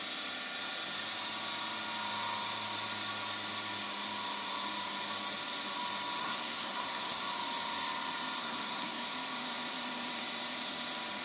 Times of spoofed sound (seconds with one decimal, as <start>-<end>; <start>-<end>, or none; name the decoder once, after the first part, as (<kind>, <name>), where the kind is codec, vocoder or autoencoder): 6.2-7.2 (codec, SNAC); 8.4-9.0